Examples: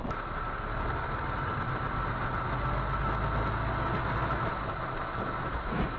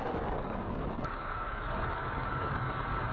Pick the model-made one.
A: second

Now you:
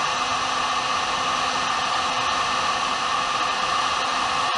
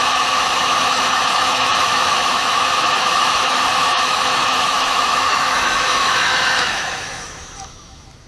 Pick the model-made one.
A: second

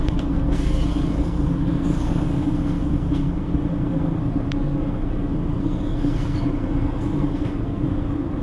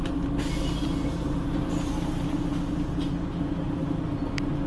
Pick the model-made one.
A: first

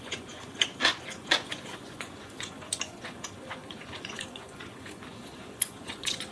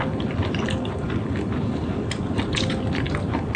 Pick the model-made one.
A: first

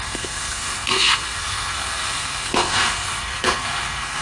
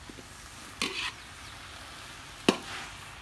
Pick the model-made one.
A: first